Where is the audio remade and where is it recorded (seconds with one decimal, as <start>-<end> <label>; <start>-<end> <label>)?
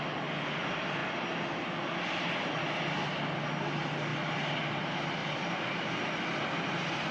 0.0-7.1 recorded